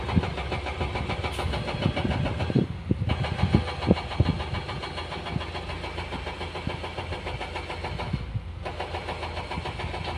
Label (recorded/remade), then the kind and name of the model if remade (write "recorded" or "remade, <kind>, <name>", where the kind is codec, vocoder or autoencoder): recorded